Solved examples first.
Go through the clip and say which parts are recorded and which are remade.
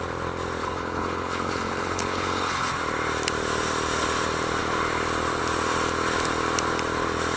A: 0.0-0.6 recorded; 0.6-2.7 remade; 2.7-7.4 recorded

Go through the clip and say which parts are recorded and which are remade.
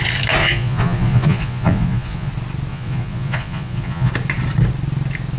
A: 0.0-0.4 recorded; 0.4-2.3 remade; 2.3-2.7 recorded; 2.7-4.1 remade; 4.1-5.4 recorded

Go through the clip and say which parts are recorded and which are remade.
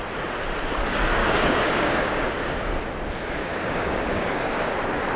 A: 0.0-1.2 recorded; 1.2-2.3 remade; 2.3-3.4 recorded; 3.4-4.7 remade; 4.7-5.2 recorded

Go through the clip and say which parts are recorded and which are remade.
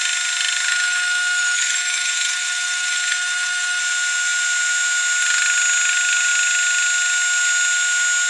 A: 0.0-0.7 recorded; 0.7-3.8 remade; 3.8-8.3 recorded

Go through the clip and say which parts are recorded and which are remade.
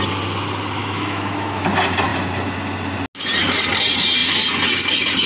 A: 0.0-0.8 recorded; 0.8-1.6 remade; 1.6-5.3 recorded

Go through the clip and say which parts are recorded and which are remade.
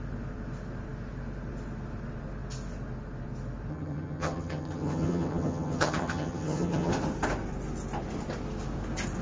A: 0.0-3.7 recorded; 3.7-6.9 remade; 6.9-9.2 recorded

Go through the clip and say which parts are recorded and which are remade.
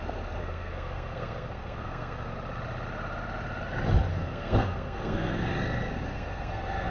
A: 0.0-0.4 recorded; 0.4-2.3 remade; 2.3-4.1 recorded; 4.1-5.5 remade; 5.5-6.1 recorded; 6.1-6.9 remade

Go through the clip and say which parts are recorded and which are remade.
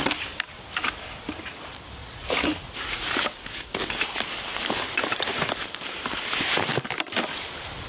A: 0.0-2.0 recorded; 2.0-3.2 remade; 3.2-7.9 recorded